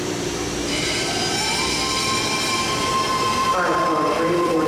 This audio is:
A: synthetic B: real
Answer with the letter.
A